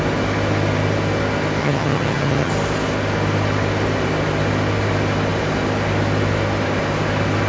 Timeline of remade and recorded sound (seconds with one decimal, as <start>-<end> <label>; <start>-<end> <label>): 0.0-1.6 recorded; 1.6-2.5 remade; 2.5-7.5 recorded